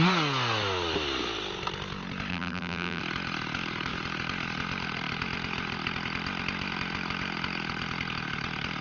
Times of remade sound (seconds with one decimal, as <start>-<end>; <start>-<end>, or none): 2.3-3.0